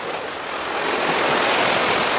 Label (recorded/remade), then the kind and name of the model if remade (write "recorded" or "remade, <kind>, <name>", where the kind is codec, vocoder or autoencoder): recorded